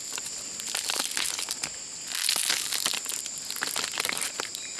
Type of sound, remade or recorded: recorded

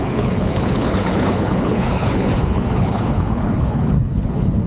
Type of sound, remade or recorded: remade